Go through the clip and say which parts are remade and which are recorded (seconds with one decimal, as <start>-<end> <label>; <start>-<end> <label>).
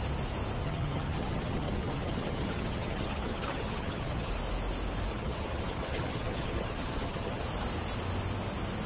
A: 0.0-0.6 recorded; 0.6-4.3 remade; 4.3-5.1 recorded; 5.1-7.4 remade; 7.4-8.9 recorded